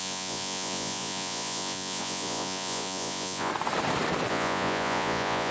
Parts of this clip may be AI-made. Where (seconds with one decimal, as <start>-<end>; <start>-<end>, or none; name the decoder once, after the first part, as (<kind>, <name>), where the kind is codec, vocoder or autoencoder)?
0.0-3.5 (vocoder, Vocos); 4.3-5.5